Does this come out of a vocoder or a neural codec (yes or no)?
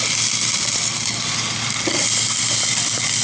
no